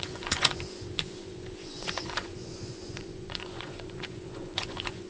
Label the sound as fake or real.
fake